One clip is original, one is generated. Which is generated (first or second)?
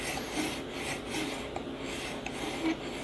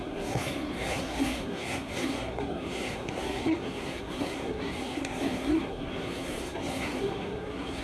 second